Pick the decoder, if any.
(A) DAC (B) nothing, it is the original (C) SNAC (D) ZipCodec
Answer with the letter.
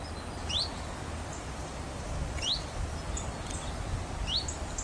B